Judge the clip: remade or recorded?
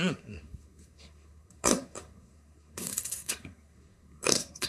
remade